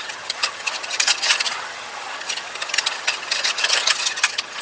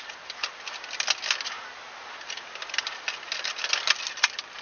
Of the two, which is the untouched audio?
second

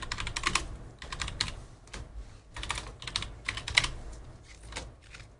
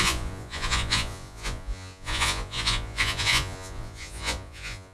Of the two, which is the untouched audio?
first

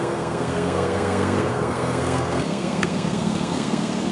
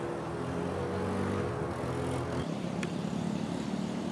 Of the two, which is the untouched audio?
second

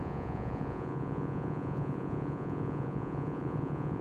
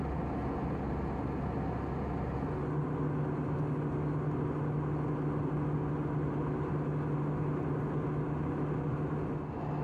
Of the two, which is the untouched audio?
second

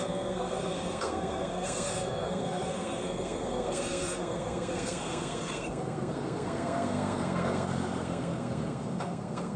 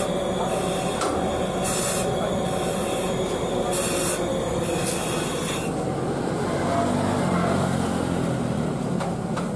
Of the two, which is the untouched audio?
second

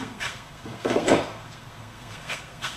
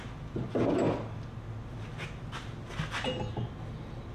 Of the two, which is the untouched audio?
second